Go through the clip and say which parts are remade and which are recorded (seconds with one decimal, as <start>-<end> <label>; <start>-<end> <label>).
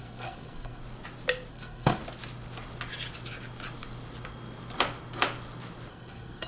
0.0-0.8 remade; 0.8-1.5 recorded; 1.5-2.0 remade; 2.0-5.9 recorded; 5.9-6.5 remade